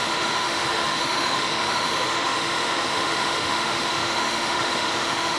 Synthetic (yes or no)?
yes